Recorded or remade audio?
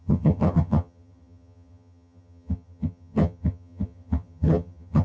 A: remade